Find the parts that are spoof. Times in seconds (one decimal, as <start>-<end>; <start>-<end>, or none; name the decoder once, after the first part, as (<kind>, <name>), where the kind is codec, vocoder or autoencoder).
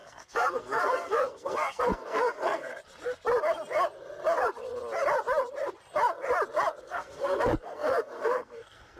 0.0-2.7 (codec, SNAC); 6.8-9.0